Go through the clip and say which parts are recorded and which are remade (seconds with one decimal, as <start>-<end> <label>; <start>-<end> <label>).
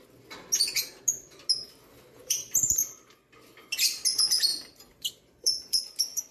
0.0-2.2 recorded; 2.2-3.1 remade; 3.1-4.5 recorded; 4.5-5.8 remade; 5.8-6.3 recorded